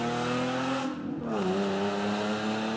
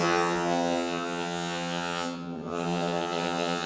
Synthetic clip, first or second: second